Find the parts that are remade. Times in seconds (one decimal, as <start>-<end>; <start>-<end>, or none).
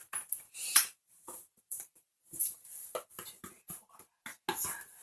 0.5-2.7